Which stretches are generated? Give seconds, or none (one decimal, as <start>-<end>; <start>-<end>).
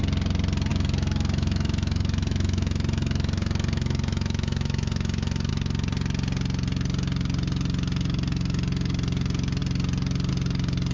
0.7-5.5